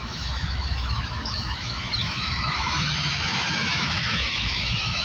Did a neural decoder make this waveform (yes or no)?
yes